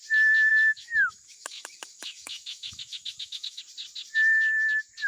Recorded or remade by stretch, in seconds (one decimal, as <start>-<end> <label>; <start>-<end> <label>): 0.0-0.5 recorded; 0.5-3.6 remade; 3.6-5.1 recorded